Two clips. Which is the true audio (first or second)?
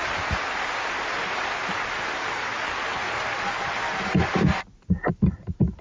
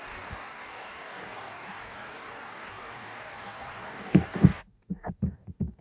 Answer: first